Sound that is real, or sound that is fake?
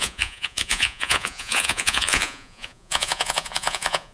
fake